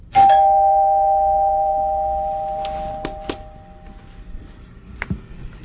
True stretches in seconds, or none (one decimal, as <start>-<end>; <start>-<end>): 0.0-5.6